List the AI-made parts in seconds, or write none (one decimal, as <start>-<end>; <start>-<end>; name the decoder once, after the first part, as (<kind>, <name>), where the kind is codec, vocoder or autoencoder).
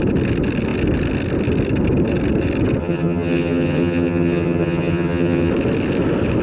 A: 2.8-5.5 (vocoder, HiFi-GAN)